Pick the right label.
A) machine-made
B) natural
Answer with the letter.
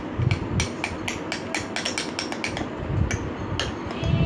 B